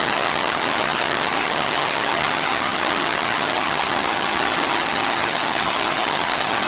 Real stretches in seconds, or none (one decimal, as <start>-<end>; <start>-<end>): none